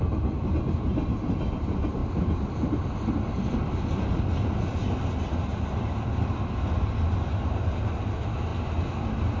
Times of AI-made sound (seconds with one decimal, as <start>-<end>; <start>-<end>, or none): none